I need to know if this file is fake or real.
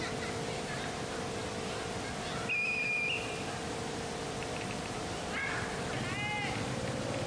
real